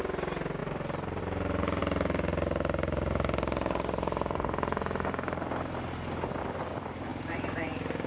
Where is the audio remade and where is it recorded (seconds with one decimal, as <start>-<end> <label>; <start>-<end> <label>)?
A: 0.0-0.6 recorded; 0.6-1.2 remade; 1.2-7.1 recorded; 7.1-8.1 remade